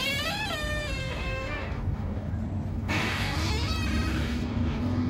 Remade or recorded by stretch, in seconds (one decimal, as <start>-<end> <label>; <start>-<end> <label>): 0.0-1.0 recorded; 1.0-2.3 remade; 2.3-2.7 recorded; 2.7-3.5 remade; 3.5-4.1 recorded; 4.1-5.1 remade